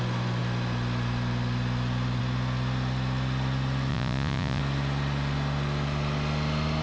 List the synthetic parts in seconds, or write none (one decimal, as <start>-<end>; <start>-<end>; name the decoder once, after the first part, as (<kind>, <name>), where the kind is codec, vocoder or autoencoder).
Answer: 3.9-4.6 (vocoder, Vocos)